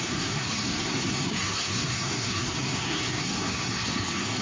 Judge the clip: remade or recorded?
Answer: remade